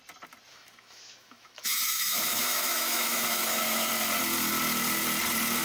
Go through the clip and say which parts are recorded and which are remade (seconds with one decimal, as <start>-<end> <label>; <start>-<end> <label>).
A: 0.0-0.5 recorded; 0.5-3.9 remade; 3.9-5.6 recorded